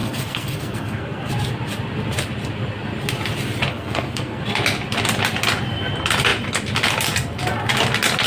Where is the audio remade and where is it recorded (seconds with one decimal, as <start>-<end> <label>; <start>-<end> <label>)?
0.0-1.3 remade; 1.3-3.7 recorded; 3.7-4.4 remade; 4.4-8.3 recorded